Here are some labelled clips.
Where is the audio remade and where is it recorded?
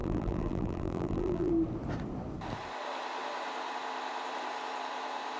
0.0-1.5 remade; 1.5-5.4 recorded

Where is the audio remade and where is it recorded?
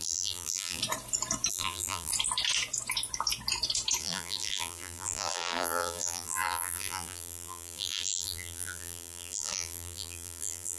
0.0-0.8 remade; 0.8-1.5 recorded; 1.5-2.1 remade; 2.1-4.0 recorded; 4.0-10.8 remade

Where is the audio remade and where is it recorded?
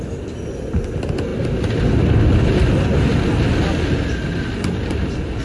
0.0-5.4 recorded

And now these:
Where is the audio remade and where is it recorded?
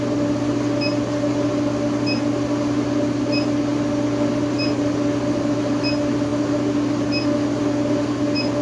0.0-8.6 recorded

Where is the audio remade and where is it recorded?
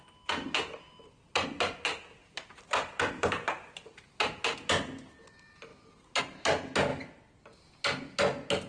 0.0-2.2 recorded; 2.2-4.2 remade; 4.2-8.7 recorded